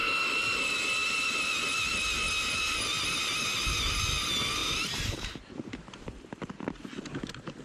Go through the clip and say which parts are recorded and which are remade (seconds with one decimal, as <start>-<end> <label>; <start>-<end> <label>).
0.0-4.6 recorded; 4.6-7.0 remade; 7.0-7.6 recorded